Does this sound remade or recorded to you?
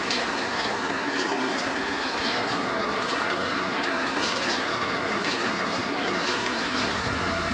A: remade